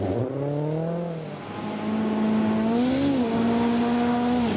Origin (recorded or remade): recorded